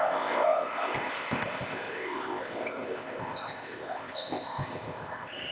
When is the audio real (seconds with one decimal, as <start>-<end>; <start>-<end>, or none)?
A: none